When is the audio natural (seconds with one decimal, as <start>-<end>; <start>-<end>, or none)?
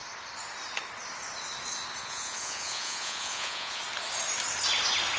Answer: 0.0-2.0; 3.8-5.2